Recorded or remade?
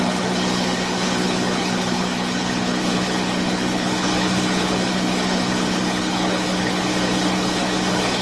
remade